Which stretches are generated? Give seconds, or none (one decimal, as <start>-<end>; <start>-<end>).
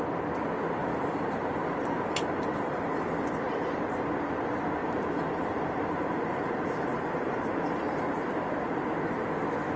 0.8-3.2; 4.8-8.8